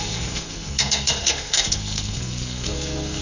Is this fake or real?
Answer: fake